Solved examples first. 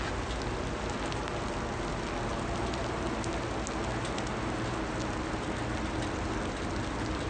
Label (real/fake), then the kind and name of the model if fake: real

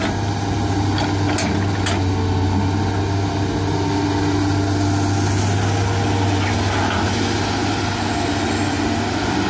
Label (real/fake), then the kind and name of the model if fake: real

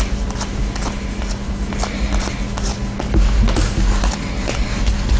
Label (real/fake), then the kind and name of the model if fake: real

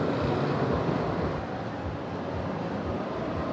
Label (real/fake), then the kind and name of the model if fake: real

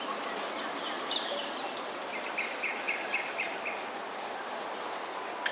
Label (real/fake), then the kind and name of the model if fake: real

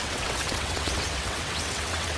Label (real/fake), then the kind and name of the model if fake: fake, vocoder, WaveNeXt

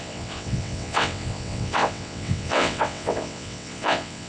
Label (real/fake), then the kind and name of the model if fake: fake, vocoder, WaveNeXt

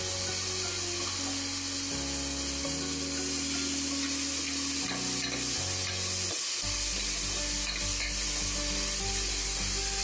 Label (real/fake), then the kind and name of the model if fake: real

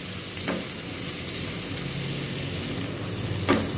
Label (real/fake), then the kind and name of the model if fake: real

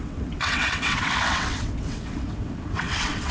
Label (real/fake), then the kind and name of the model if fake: fake, vocoder, WaveNeXt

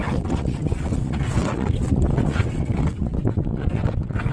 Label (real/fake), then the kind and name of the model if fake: fake, vocoder, WaveNeXt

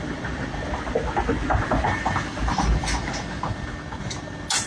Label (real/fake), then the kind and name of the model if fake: real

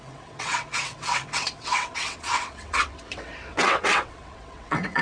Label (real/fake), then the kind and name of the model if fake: fake, vocoder, WaveNeXt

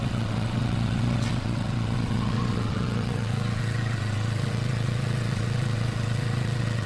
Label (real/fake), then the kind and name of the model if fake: fake, vocoder, WaveNeXt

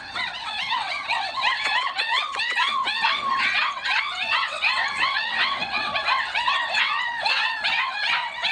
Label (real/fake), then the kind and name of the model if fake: fake, vocoder, WaveNeXt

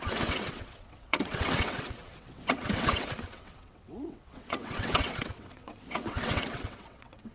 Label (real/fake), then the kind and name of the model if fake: fake, vocoder, WaveNeXt